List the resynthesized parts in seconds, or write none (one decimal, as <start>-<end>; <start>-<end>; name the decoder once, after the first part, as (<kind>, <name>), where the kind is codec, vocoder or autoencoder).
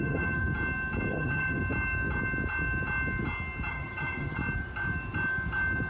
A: 0.0-0.4 (vocoder, HiFi-GAN); 1.1-1.6; 3.7-4.4